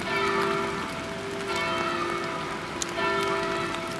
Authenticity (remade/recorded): recorded